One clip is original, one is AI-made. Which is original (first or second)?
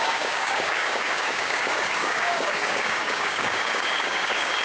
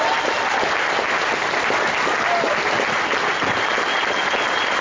second